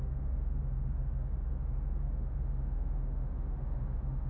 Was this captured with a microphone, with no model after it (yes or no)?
no